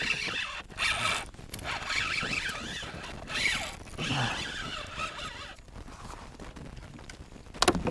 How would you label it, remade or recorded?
recorded